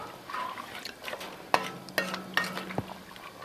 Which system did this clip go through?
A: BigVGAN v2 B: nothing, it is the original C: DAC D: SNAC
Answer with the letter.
B